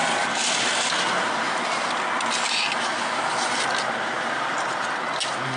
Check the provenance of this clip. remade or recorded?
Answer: recorded